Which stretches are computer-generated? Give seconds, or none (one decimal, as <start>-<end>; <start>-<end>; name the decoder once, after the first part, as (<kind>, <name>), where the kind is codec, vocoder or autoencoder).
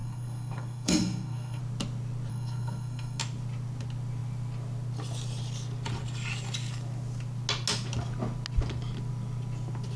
0.0-1.6 (codec, SNAC); 2.3-3.2